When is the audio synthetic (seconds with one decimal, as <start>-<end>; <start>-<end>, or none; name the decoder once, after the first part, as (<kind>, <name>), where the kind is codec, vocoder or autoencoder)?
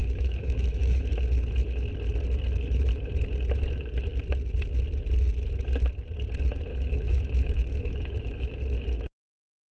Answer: 0.0-1.1 (autoencoder, DAC-VAE); 6.7-8.5